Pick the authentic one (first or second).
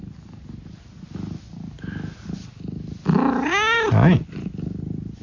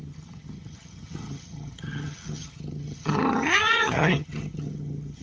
first